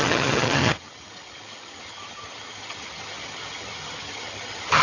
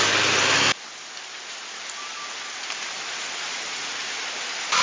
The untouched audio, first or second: second